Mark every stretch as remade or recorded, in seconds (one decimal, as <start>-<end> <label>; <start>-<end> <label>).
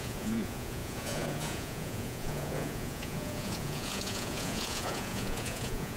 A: 0.0-6.0 remade